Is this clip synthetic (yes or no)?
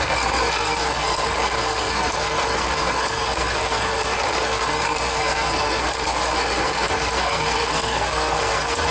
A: yes